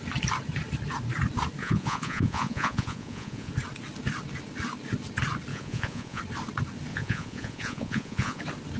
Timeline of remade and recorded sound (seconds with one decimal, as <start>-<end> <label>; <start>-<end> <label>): 0.0-1.6 recorded; 1.6-3.5 remade; 3.5-5.5 recorded; 5.5-6.2 remade; 6.2-6.9 recorded; 6.9-8.4 remade; 8.4-8.8 recorded